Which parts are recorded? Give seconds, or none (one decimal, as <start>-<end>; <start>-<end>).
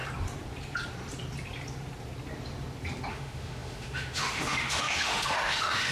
0.0-3.1